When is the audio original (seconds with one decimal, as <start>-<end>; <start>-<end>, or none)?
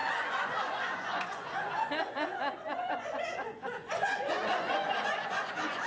none